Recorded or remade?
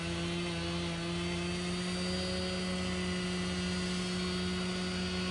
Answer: recorded